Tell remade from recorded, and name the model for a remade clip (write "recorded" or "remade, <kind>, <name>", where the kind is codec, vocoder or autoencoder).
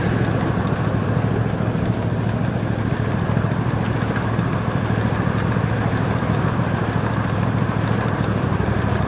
recorded